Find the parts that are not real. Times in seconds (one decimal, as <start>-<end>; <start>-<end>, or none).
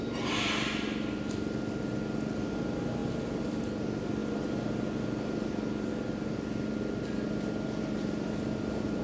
none